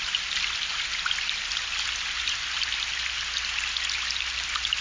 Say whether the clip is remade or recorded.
recorded